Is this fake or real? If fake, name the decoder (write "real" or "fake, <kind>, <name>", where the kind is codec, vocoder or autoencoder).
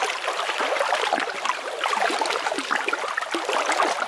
real